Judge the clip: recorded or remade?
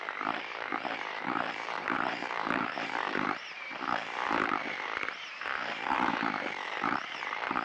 remade